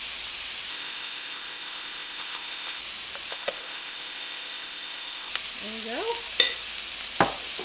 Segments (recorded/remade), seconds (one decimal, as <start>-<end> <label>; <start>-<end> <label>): 0.0-0.7 recorded; 0.7-2.8 remade; 2.8-3.3 recorded; 3.3-5.3 remade; 5.3-7.6 recorded